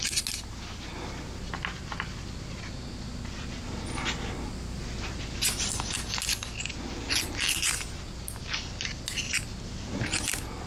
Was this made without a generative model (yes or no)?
yes